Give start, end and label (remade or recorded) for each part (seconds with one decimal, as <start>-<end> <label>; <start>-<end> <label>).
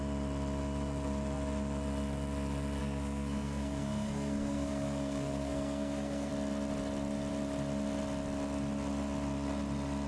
0.0-2.8 recorded; 2.8-6.3 remade; 6.3-10.1 recorded